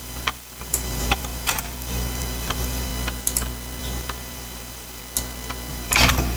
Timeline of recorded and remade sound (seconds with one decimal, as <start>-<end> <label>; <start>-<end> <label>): 0.0-2.9 remade; 2.9-3.8 recorded; 3.8-5.0 remade; 5.0-5.7 recorded; 5.7-6.4 remade